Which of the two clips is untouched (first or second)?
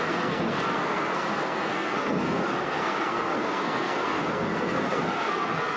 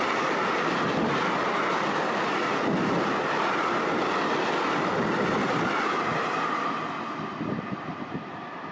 second